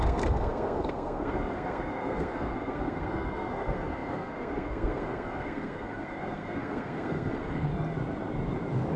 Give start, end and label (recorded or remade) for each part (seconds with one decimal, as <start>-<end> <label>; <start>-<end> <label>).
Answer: 0.0-7.7 remade; 7.7-9.0 recorded

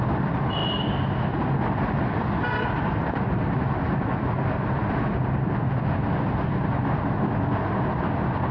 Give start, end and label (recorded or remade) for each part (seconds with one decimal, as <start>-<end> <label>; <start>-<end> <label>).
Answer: 0.0-8.5 recorded

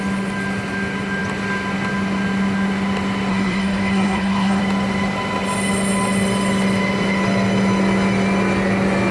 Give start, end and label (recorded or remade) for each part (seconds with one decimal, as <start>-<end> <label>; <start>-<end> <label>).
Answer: 0.0-3.3 recorded; 3.3-4.6 remade; 4.6-9.1 recorded

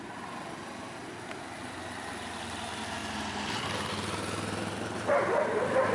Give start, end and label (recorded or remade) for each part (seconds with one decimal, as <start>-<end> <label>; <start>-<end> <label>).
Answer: 0.0-5.9 recorded

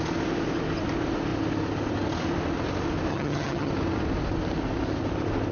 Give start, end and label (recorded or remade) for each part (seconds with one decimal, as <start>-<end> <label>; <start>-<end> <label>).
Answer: 0.0-3.1 recorded; 3.1-3.7 remade; 3.7-5.5 recorded

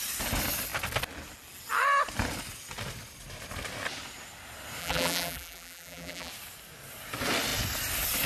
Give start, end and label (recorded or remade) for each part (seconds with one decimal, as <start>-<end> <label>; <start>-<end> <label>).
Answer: 0.0-4.8 recorded; 4.8-6.3 remade; 6.3-8.3 recorded